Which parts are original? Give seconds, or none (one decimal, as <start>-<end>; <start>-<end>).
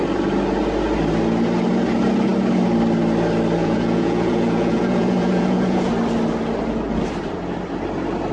0.0-3.6; 5.9-8.3